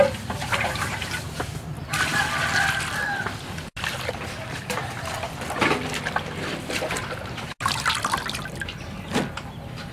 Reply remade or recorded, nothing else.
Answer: recorded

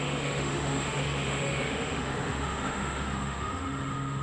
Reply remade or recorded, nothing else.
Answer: remade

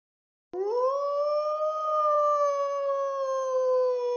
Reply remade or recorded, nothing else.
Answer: recorded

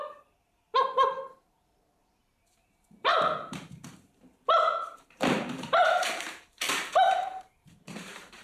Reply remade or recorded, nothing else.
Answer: remade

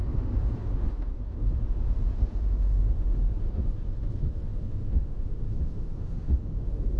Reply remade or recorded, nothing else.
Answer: remade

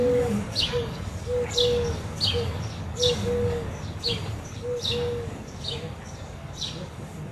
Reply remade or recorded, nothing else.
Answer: remade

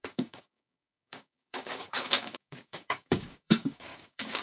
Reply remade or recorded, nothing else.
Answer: remade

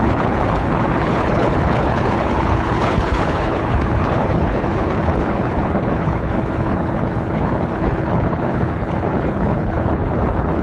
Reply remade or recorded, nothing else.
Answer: remade